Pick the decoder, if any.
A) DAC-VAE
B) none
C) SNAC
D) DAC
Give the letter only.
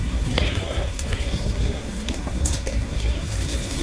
C